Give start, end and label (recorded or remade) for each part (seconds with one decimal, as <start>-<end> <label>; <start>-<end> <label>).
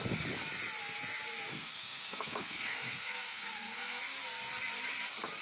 0.0-1.5 recorded; 1.5-4.0 remade; 4.0-5.4 recorded